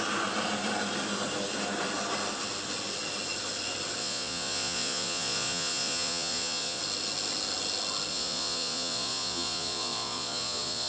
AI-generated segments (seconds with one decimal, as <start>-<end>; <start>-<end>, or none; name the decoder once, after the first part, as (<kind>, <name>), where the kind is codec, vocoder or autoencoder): 4.0-6.8 (vocoder, Vocos); 8.1-10.9